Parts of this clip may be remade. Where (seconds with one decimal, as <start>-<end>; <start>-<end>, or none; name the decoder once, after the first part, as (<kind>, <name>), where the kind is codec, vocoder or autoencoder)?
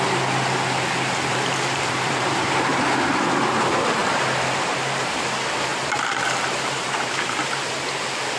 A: 1.3-2.8 (vocoder, BigVGAN v2); 4.0-5.2; 5.7-7.7